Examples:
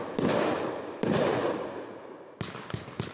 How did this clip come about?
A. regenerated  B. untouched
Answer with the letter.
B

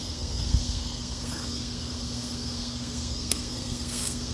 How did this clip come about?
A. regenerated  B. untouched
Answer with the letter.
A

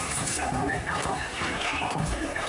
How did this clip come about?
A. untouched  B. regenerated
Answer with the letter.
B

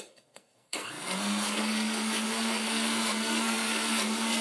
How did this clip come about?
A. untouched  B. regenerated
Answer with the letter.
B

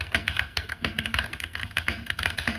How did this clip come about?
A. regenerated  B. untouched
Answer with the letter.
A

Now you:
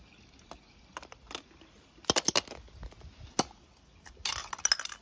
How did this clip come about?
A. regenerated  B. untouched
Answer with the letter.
B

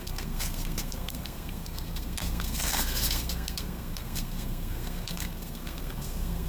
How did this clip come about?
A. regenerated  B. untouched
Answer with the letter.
A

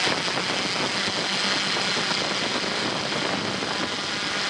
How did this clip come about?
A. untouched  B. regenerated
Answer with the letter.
A